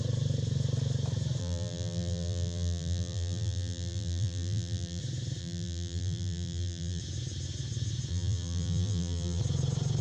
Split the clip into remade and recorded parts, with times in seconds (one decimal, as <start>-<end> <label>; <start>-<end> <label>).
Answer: 0.0-1.4 recorded; 1.4-5.0 remade; 5.0-5.4 recorded; 5.4-7.0 remade; 7.0-8.1 recorded; 8.1-9.4 remade; 9.4-10.0 recorded